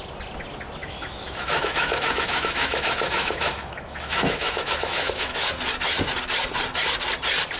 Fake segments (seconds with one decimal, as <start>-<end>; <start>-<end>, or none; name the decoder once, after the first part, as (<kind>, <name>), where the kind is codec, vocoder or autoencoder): 0.8-5.4 (autoencoder, DAC-VAE)